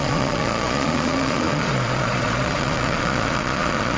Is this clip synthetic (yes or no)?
yes